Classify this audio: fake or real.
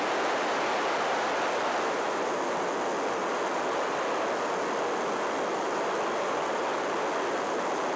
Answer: real